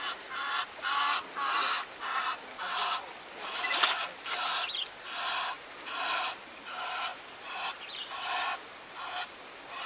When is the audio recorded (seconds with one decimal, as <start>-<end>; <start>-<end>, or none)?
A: 0.0-9.9